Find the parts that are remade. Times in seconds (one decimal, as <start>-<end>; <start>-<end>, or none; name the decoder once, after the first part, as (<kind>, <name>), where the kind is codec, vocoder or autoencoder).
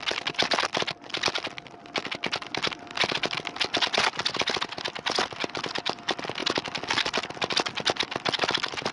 none